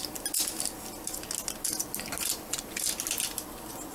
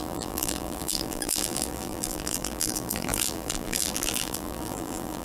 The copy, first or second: second